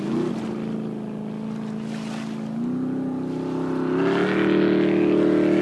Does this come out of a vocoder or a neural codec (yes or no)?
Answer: no